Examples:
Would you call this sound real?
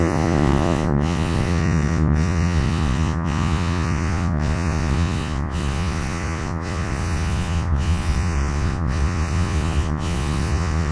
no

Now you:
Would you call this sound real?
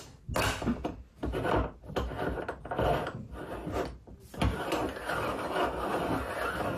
yes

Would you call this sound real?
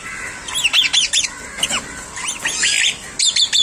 yes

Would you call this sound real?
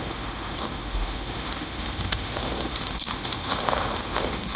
no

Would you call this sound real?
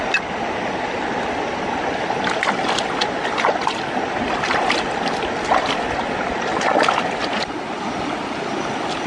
yes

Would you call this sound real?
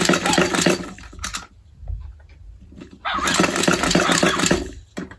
yes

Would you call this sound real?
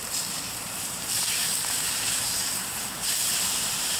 no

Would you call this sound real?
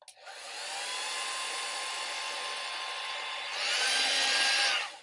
yes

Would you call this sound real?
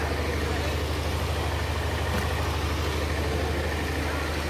yes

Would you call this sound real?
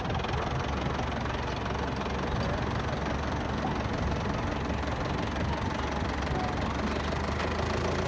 yes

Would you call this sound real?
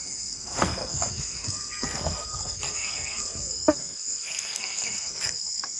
no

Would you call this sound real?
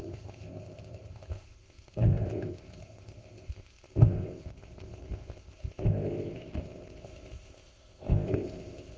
no